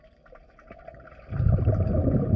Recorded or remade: recorded